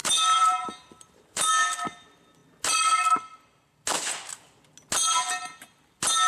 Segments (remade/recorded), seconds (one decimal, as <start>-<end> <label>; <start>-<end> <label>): 0.0-1.5 remade; 1.5-6.3 recorded